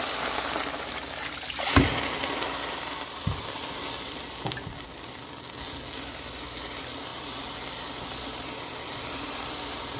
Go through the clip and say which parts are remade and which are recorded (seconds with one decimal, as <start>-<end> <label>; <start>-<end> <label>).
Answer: 0.0-10.0 recorded